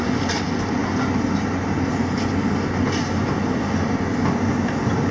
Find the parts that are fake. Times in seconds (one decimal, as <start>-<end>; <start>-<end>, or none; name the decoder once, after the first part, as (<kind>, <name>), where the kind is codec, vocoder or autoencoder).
none